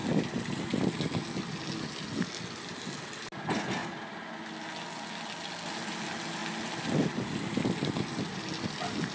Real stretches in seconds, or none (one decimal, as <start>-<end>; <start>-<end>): 0.0-9.1